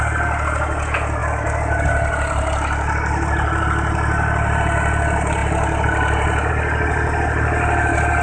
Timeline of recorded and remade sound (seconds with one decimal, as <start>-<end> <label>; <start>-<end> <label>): 0.0-8.2 recorded